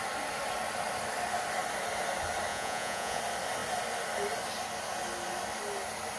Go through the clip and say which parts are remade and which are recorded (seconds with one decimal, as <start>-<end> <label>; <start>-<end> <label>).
0.0-2.5 recorded; 2.5-3.2 remade; 3.2-6.2 recorded